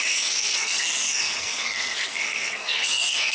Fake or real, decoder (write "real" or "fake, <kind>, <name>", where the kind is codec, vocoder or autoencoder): fake, codec, SNAC